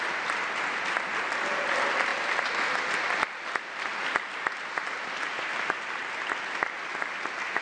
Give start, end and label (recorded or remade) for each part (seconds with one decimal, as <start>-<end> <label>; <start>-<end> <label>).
0.0-2.1 recorded; 2.1-6.1 remade; 6.1-7.6 recorded